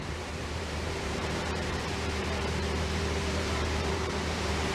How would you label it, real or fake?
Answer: fake